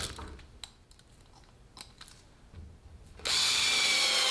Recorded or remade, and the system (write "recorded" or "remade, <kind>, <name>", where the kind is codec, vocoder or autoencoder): recorded